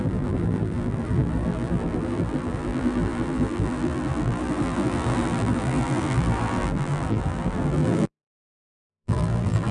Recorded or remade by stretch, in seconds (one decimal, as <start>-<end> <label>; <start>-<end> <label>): 0.0-9.7 remade